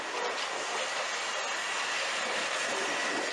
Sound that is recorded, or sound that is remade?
recorded